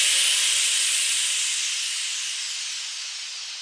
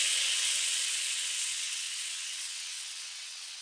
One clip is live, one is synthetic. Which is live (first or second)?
first